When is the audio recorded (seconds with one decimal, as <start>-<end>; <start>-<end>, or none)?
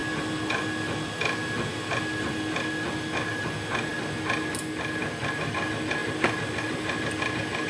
0.0-7.7